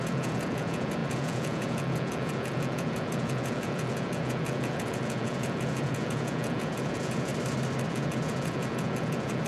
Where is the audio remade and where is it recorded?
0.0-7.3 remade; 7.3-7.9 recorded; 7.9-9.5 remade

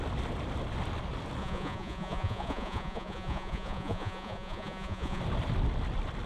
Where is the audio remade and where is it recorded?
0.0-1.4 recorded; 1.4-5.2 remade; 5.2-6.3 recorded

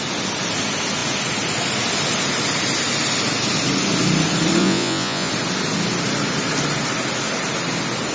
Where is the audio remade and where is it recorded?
0.0-4.6 recorded; 4.6-5.3 remade; 5.3-8.1 recorded

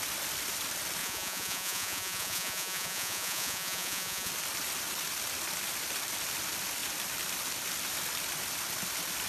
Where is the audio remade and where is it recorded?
0.0-1.0 recorded; 1.0-4.3 remade; 4.3-9.3 recorded

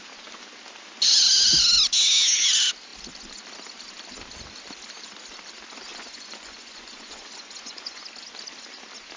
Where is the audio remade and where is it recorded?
0.0-5.9 recorded; 5.9-8.0 remade; 8.0-9.2 recorded

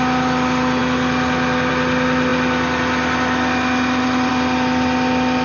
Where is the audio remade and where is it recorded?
0.0-5.4 recorded